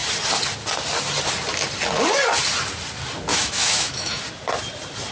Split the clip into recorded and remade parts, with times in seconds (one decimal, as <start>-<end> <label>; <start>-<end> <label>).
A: 0.0-3.3 recorded; 3.3-4.2 remade; 4.2-5.1 recorded